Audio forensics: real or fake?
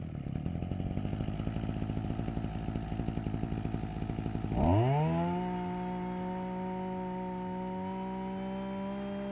real